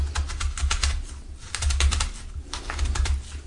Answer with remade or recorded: recorded